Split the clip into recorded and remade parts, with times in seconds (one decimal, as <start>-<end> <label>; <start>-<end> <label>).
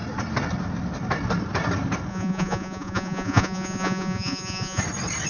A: 0.0-2.1 recorded; 2.1-4.8 remade; 4.8-5.3 recorded